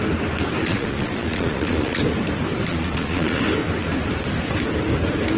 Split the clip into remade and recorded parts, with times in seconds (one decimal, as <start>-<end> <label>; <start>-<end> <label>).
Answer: 0.0-0.6 recorded; 0.6-2.0 remade; 2.0-2.7 recorded; 2.7-3.4 remade; 3.4-5.4 recorded